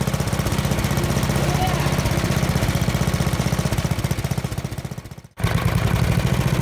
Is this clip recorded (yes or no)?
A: yes